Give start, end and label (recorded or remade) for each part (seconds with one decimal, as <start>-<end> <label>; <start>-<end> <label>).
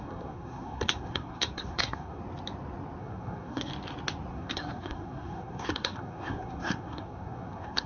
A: 0.0-2.2 remade; 2.2-3.0 recorded; 3.0-3.7 remade; 3.7-4.3 recorded; 4.3-7.9 remade